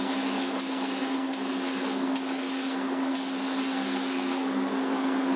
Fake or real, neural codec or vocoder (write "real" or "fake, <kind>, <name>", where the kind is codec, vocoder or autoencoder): fake, codec, SNAC